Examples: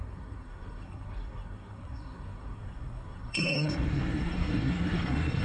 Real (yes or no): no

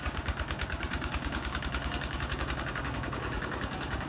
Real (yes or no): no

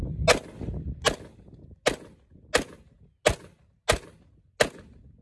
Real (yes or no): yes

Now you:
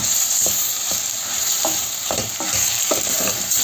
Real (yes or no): no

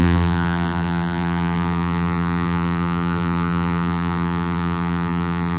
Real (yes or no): no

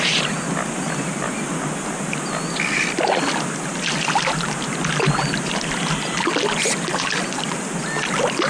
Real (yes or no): yes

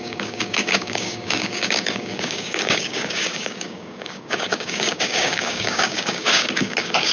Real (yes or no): no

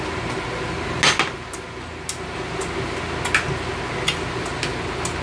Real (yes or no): yes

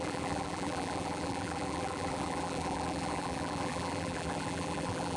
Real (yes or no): no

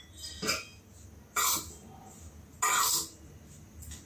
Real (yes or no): yes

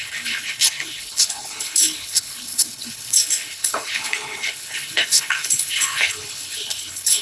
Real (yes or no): no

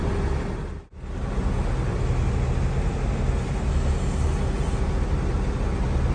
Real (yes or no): yes